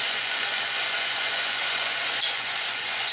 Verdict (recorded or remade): remade